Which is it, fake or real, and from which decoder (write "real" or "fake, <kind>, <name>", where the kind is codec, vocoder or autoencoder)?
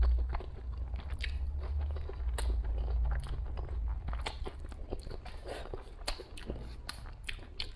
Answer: real